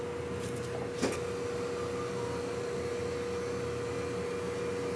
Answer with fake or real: real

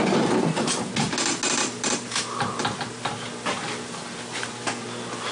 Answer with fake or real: real